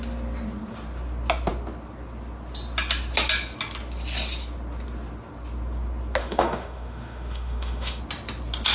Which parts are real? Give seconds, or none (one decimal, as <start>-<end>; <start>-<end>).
0.0-6.2; 8.0-8.7

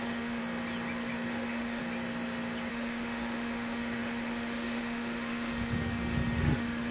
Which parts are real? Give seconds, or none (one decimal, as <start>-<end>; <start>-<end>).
0.4-1.3; 1.8-2.7

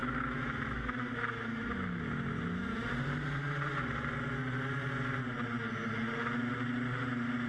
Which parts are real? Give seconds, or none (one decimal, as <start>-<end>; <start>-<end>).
2.9-7.5

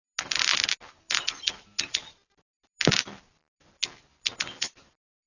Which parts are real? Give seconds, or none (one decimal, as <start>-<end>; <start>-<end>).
0.0-5.3

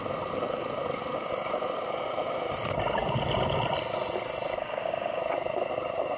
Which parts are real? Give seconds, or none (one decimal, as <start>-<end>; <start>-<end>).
0.0-4.6; 5.2-6.2

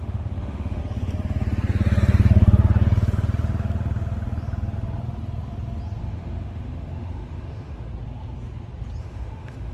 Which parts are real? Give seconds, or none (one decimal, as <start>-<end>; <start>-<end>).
0.8-6.0; 7.9-9.0